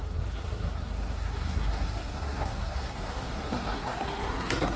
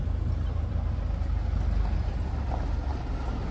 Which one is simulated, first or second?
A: first